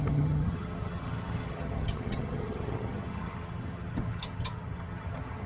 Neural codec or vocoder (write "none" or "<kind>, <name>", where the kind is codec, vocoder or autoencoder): vocoder, HiFi-GAN